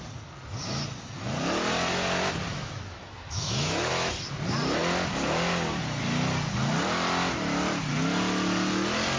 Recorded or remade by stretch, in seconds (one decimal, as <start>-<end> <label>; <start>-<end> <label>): 0.0-2.5 recorded; 2.5-3.9 remade; 3.9-9.2 recorded